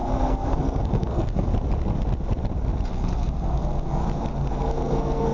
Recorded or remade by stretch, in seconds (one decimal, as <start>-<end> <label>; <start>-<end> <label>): 0.0-1.5 remade; 1.5-2.9 recorded; 2.9-4.0 remade; 4.0-4.5 recorded; 4.5-5.3 remade